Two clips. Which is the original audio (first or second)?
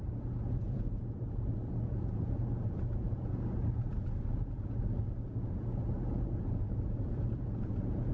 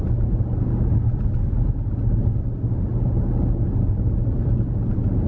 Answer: second